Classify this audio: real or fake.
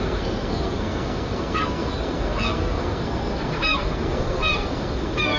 fake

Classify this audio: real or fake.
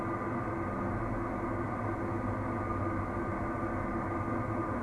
real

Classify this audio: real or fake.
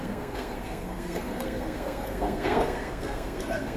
fake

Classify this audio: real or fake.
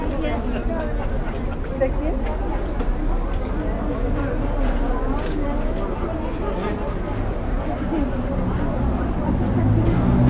real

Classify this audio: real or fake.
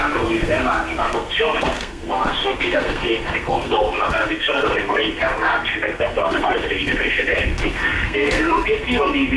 fake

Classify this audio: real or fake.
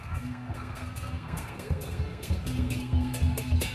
fake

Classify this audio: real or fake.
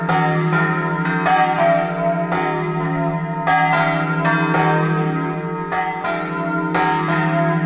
real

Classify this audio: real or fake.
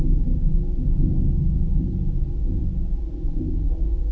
real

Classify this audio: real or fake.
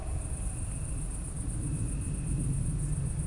real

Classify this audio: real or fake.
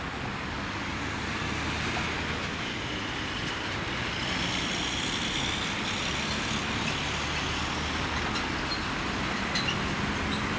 real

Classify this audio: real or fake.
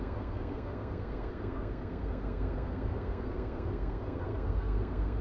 fake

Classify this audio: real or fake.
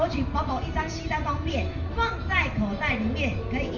real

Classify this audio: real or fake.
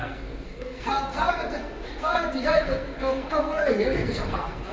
fake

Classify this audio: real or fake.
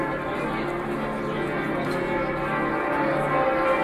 real